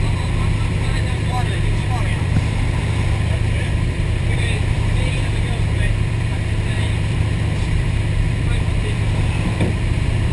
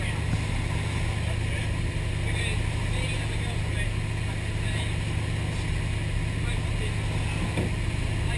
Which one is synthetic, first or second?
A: first